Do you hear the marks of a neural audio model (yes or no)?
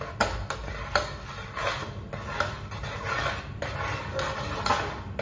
no